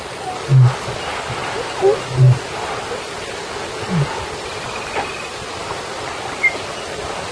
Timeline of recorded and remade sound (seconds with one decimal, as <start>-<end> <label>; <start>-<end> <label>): 0.0-7.3 recorded